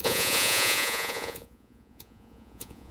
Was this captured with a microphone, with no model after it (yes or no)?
no